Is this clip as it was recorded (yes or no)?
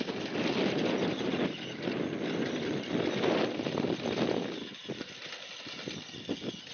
yes